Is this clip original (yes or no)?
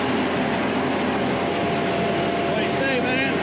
yes